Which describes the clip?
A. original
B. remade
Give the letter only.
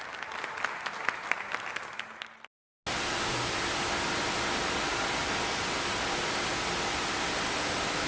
A